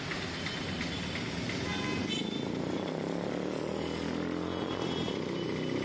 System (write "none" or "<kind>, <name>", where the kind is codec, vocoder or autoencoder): none